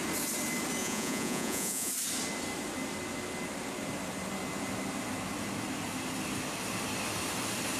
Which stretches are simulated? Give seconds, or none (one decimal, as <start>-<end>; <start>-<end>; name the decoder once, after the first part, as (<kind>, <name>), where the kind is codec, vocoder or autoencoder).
0.8-1.9 (vocoder, Vocos)